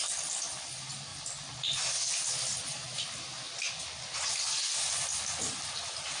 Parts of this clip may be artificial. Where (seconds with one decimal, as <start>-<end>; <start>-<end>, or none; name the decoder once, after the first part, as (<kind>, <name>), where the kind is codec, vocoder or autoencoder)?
none